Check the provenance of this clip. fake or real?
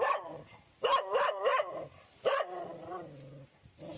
real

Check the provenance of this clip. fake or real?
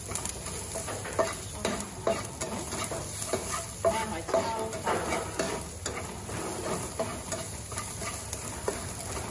real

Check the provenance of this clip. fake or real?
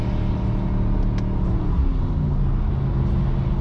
real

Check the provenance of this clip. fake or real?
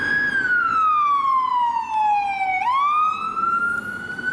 real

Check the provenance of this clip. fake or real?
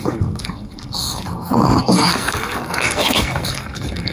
fake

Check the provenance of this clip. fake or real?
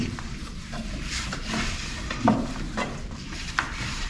fake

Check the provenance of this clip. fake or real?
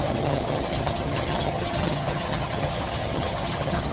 fake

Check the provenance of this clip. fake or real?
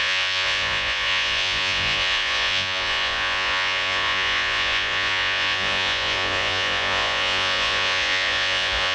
fake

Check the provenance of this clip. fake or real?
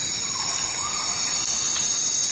real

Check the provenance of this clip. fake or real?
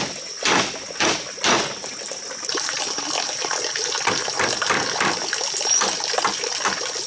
real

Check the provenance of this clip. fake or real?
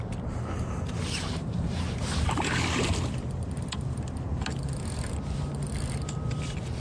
real